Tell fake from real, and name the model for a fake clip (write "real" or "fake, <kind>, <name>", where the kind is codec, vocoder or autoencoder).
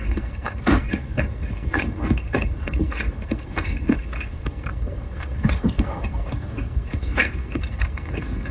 fake, codec, SNAC